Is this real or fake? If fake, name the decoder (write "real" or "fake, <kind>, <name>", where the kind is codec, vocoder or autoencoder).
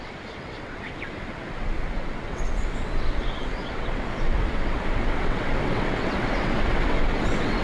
fake, vocoder, WaveNeXt